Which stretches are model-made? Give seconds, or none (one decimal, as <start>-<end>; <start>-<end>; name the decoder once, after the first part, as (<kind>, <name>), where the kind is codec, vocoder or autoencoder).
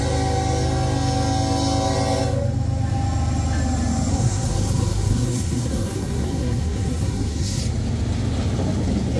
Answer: 4.1-7.6 (codec, SNAC)